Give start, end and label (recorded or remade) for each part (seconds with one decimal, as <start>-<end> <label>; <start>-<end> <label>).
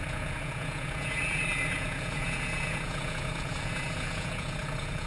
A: 0.0-5.1 remade